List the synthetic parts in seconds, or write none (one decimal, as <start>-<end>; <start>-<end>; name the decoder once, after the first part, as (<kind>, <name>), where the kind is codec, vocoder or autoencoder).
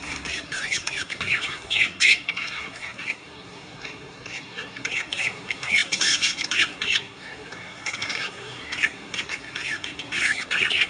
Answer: 0.0-10.9 (codec, SNAC)